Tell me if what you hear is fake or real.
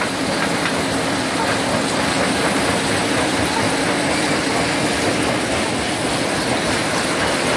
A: real